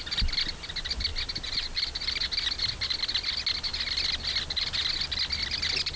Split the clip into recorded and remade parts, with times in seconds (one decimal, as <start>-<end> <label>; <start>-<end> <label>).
0.0-6.0 recorded